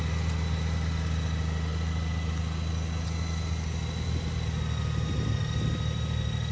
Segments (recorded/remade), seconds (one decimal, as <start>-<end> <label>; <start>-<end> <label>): 0.0-6.5 recorded